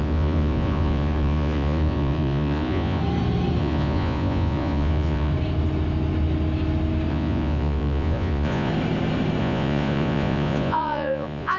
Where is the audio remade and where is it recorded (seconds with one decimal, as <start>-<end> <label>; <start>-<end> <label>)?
0.0-3.0 remade; 3.0-3.6 recorded; 3.6-5.3 remade; 5.3-7.1 recorded; 7.1-8.7 remade; 8.7-9.4 recorded; 9.4-11.6 remade